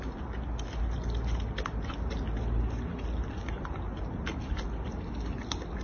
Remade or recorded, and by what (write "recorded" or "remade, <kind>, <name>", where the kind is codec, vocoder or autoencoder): recorded